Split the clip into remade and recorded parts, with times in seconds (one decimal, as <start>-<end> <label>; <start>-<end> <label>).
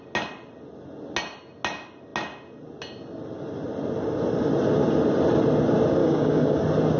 0.0-6.0 recorded; 6.0-6.6 remade; 6.6-7.0 recorded